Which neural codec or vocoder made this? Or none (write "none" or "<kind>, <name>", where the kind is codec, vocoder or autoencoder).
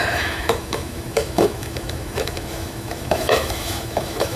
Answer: autoencoder, DAC-VAE